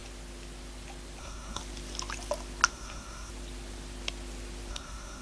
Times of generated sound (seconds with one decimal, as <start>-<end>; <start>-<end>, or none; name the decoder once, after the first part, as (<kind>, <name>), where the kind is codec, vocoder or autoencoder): 1.2-1.6 (codec, SNAC); 2.7-3.3; 4.7-5.2